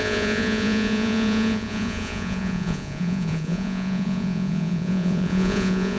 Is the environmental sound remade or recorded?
remade